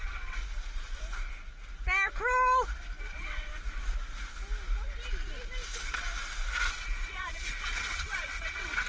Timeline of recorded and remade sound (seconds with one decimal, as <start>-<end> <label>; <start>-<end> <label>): 0.0-0.4 remade; 0.4-3.0 recorded; 3.0-3.5 remade; 3.5-6.7 recorded; 6.7-8.9 remade